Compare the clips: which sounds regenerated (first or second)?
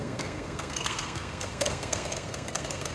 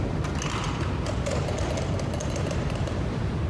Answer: first